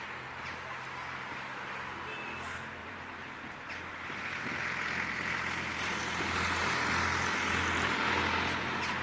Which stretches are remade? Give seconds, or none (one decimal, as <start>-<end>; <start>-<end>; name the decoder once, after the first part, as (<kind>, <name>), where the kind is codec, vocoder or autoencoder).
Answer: 2.8-6.0 (vocoder, BigVGAN v2)